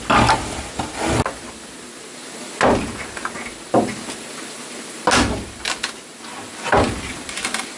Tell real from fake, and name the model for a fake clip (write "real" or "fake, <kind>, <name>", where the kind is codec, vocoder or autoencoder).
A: real